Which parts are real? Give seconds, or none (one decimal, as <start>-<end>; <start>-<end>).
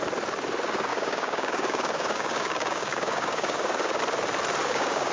0.0-0.9; 4.0-4.6